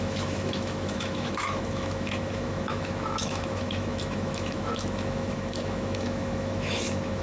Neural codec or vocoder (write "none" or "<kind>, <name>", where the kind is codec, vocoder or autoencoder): autoencoder, DAC-VAE